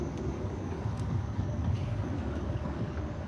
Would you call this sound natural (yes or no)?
no